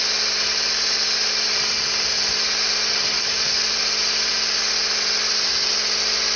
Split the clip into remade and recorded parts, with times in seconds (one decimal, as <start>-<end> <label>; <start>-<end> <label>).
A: 0.0-6.4 recorded

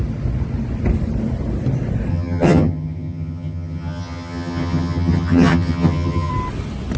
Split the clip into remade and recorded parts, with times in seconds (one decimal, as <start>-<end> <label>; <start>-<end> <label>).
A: 0.0-2.1 recorded; 2.1-6.3 remade; 6.3-7.0 recorded